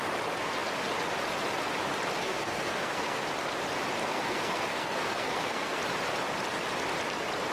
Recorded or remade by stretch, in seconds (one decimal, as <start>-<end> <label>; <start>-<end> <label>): 0.0-2.2 recorded; 2.2-3.2 remade; 3.2-4.0 recorded; 4.0-5.8 remade; 5.8-7.5 recorded